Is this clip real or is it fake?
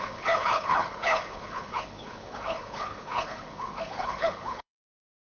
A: fake